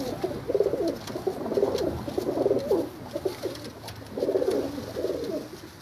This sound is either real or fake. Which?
real